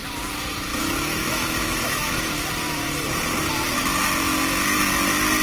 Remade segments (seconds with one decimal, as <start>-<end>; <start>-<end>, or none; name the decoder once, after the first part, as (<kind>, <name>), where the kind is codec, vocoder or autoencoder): 0.7-3.5 (autoencoder, DAC-VAE)